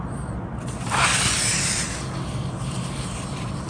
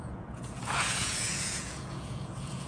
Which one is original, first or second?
first